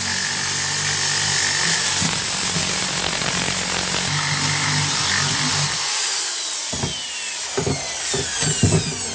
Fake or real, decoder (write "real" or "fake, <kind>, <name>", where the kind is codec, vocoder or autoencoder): real